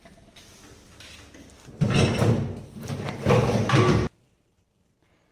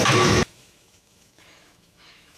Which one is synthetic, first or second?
second